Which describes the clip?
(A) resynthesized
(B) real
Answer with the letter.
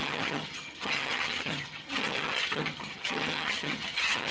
A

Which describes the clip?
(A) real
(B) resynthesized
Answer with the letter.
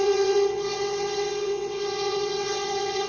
B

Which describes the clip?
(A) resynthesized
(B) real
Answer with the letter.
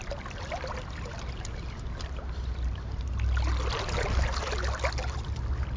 B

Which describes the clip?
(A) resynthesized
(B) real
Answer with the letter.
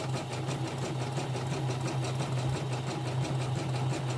B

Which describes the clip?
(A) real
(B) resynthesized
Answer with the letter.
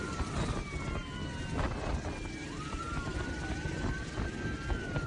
A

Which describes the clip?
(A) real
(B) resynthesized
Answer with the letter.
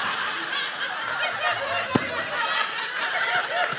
A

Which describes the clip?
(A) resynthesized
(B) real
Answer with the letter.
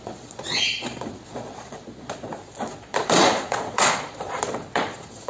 A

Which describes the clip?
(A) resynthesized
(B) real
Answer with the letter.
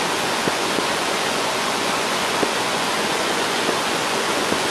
A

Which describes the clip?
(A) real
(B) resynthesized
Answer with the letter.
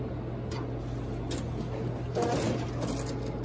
A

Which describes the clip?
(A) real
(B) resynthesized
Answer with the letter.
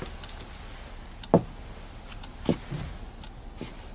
A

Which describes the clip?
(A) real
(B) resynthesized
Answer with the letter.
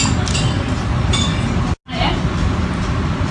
A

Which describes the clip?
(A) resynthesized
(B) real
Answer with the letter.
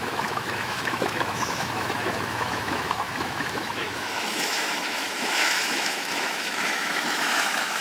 A